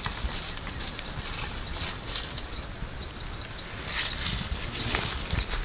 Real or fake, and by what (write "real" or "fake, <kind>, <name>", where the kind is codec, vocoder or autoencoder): real